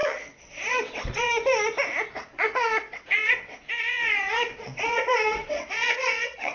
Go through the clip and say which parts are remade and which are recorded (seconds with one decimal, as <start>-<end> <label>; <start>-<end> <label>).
0.0-1.3 remade; 1.3-2.2 recorded; 2.2-6.5 remade